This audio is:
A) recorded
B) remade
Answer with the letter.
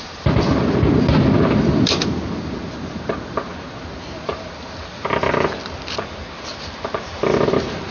A